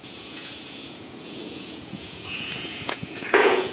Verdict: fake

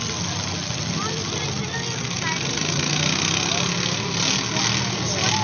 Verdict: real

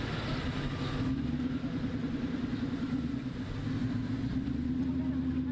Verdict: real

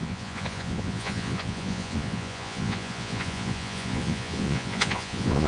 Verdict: fake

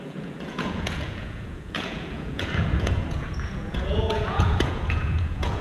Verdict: fake